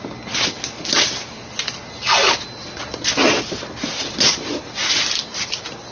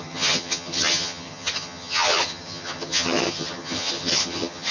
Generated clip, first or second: second